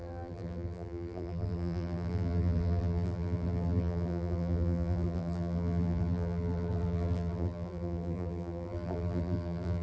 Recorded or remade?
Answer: remade